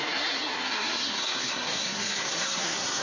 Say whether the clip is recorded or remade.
remade